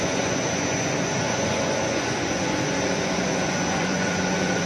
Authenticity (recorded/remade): remade